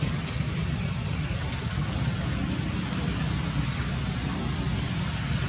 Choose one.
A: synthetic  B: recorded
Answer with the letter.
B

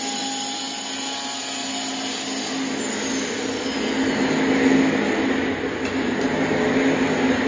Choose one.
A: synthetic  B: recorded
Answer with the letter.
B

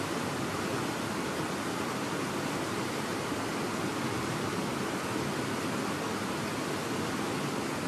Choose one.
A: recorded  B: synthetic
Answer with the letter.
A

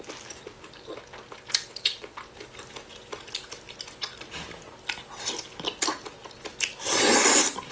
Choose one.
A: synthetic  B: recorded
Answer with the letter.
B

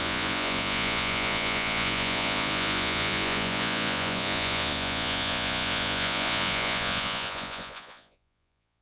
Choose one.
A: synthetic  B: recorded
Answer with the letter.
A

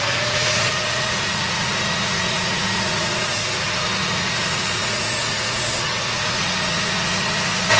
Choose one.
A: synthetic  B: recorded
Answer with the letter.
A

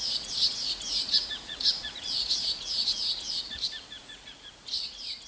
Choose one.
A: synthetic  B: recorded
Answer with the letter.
A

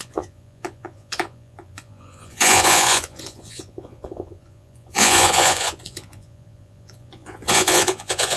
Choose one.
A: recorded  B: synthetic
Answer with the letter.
B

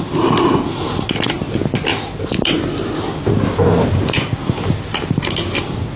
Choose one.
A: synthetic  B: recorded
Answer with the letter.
B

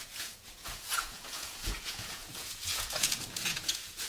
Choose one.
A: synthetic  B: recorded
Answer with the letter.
A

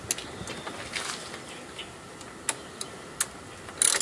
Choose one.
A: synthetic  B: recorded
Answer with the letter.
B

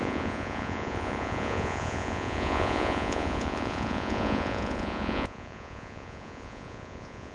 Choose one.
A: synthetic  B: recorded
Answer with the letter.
A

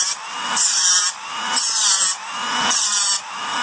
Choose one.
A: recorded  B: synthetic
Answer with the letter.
A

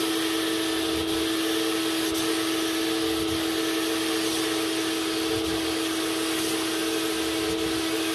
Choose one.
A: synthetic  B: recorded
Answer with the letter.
B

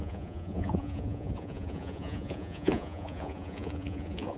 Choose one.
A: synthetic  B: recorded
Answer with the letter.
A